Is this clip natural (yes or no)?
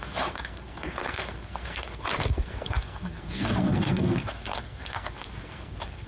no